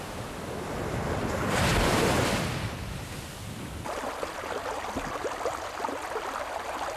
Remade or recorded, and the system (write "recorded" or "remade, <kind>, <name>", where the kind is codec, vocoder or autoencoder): recorded